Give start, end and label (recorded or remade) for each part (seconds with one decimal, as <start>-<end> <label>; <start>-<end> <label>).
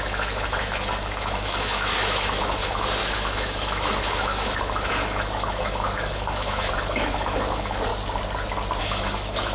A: 0.0-7.9 remade; 7.9-8.8 recorded; 8.8-9.5 remade